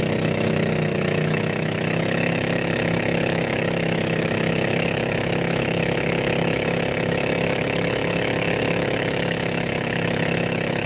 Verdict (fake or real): fake